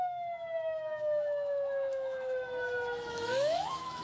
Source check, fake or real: fake